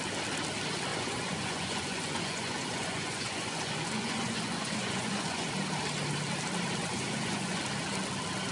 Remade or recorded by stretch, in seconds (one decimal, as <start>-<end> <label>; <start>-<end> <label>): 0.0-0.9 recorded; 0.9-5.5 remade; 5.5-6.8 recorded; 6.8-7.6 remade; 7.6-8.5 recorded

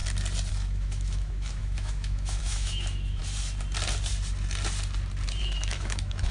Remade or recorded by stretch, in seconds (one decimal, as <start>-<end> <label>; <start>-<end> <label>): 0.0-0.5 recorded; 0.5-3.2 remade; 3.2-5.4 recorded; 5.4-6.3 remade

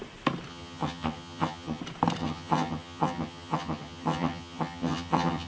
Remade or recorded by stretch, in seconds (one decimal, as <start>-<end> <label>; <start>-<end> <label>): 0.0-0.5 recorded; 0.5-1.8 remade; 1.8-2.2 recorded; 2.2-5.5 remade